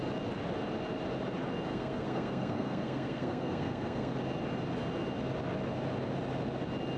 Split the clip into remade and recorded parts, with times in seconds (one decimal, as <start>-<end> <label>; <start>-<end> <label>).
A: 0.0-1.7 recorded; 1.7-4.1 remade; 4.1-7.0 recorded